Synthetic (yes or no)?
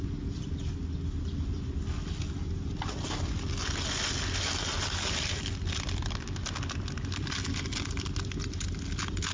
no